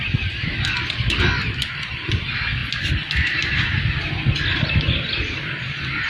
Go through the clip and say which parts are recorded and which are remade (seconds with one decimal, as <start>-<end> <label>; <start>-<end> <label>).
0.0-6.1 recorded